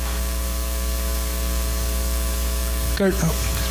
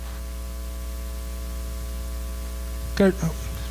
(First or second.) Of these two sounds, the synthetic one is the first